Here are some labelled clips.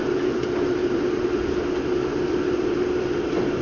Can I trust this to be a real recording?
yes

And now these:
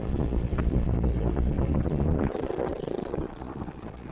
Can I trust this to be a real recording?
no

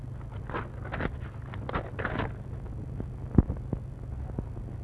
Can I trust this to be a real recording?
yes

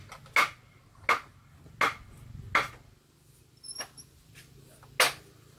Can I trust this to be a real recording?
yes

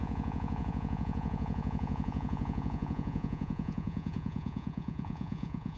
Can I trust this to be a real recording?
no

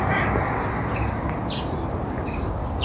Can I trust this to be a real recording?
yes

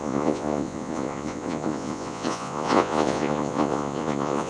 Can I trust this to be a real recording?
no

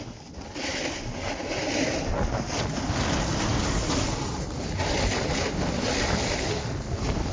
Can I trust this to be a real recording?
yes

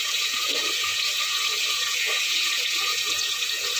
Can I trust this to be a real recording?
no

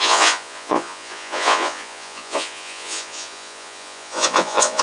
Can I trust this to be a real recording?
no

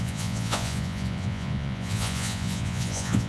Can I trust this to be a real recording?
no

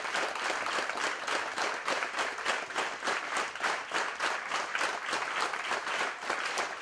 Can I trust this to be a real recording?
yes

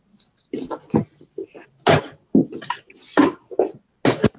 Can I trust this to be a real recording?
yes